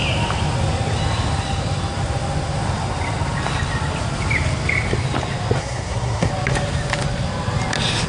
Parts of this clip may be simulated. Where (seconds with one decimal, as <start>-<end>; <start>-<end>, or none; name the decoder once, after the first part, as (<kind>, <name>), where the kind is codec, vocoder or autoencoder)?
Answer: 5.6-6.3 (codec, SNAC)